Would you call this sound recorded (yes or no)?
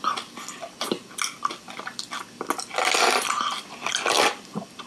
yes